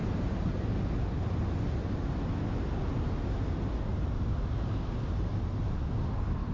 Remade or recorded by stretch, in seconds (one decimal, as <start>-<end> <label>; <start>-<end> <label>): 0.0-1.6 remade; 1.6-3.9 recorded; 3.9-5.3 remade; 5.3-6.5 recorded